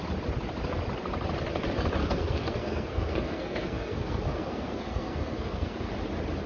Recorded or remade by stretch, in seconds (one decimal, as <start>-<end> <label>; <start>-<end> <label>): 0.0-2.0 recorded; 2.0-5.9 remade; 5.9-6.5 recorded